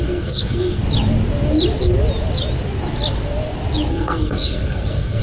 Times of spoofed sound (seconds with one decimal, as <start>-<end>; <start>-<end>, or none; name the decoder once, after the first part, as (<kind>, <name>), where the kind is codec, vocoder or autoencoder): 0.0-0.8 (codec, SNAC); 3.9-5.2